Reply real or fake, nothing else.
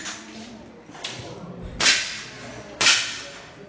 real